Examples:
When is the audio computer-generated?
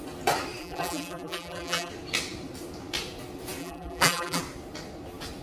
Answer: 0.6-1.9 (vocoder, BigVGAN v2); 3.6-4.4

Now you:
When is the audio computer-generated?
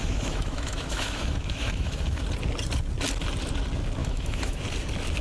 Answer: 0.0-2.2 (autoencoder, DAC-VAE); 4.0-4.6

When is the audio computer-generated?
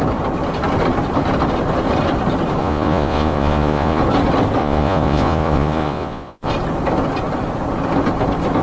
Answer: 2.6-4.0 (vocoder, Vocos); 4.6-6.5